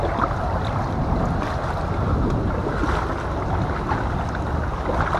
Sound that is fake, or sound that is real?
real